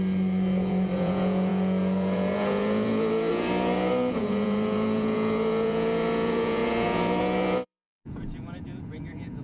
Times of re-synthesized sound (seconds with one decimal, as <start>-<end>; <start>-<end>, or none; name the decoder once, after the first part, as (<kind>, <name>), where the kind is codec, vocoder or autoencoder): 0.0-9.4 (vocoder, Vocos)